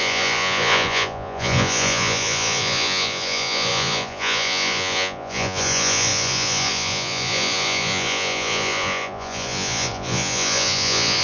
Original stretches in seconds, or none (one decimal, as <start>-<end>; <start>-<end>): none